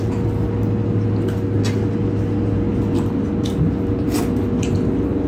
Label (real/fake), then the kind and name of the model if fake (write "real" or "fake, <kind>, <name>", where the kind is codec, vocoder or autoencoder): real